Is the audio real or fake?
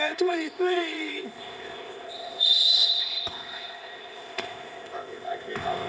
fake